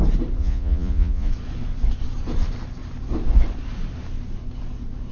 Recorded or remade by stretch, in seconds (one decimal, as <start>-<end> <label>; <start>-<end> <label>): 0.0-0.4 recorded; 0.4-1.3 remade; 1.3-5.1 recorded